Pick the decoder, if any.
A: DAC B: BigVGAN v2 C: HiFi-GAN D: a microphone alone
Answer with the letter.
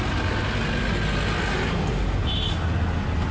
D